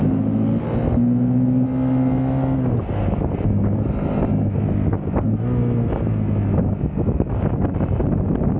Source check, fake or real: real